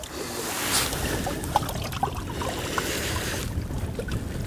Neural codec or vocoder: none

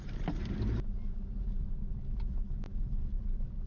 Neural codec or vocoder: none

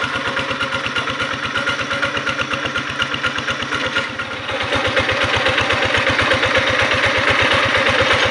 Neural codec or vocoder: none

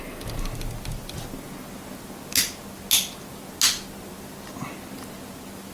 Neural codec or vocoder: none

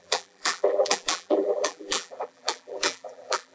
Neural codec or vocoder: vocoder, BigVGAN v2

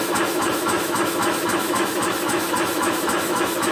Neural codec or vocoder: autoencoder, DAC-VAE